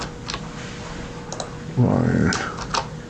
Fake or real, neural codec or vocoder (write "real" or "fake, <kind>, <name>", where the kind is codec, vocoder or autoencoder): real